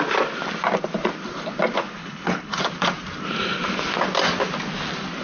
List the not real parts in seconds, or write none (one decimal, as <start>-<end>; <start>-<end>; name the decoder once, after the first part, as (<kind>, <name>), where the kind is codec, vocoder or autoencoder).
2.0-2.6 (codec, HILCodec)